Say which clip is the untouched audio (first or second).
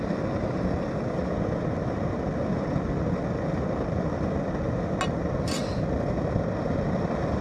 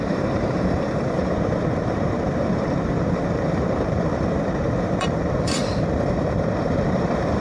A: first